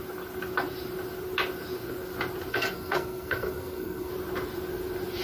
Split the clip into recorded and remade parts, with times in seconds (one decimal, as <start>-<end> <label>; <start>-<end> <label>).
0.0-2.5 recorded; 2.5-4.1 remade; 4.1-5.2 recorded